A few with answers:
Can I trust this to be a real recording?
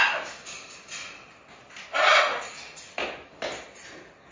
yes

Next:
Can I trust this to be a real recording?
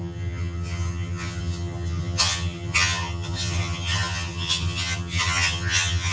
no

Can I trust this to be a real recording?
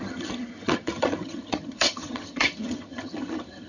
no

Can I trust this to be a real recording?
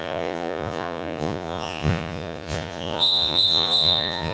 no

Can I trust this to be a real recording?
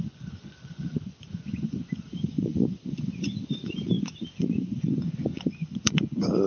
no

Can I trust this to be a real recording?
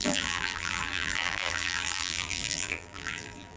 no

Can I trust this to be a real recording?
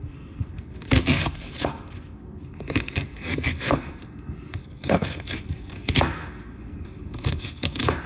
no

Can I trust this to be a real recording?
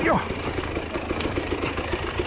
yes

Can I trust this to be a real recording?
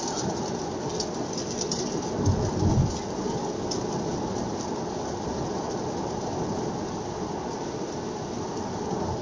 yes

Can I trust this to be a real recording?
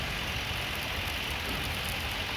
yes